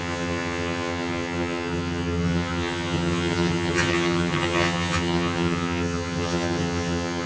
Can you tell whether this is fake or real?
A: fake